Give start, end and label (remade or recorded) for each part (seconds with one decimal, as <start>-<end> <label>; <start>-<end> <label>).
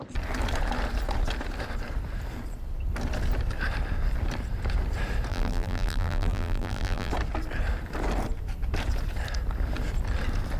0.0-5.3 recorded; 5.3-7.1 remade; 7.1-10.6 recorded